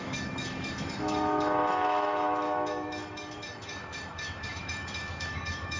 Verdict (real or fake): fake